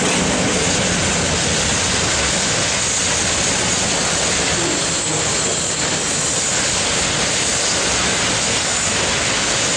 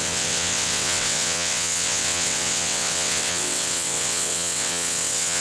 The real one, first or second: first